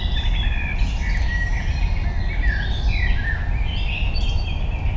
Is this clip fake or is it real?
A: real